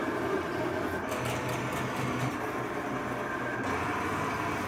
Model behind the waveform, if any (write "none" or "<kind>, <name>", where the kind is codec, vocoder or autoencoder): none